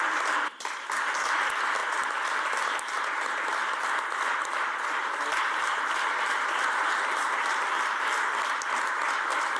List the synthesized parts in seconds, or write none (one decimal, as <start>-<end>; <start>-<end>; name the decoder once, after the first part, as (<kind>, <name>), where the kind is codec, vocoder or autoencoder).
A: none